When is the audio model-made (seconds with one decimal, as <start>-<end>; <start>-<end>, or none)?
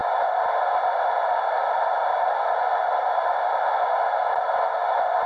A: 0.0-3.2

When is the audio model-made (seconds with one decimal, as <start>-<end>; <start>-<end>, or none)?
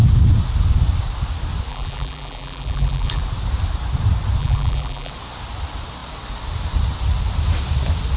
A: 1.7-3.2; 4.4-5.1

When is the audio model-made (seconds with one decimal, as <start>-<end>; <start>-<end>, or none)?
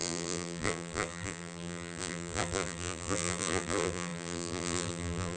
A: 0.0-5.4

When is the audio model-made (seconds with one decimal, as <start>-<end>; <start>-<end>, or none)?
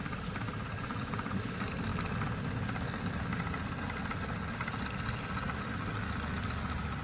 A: none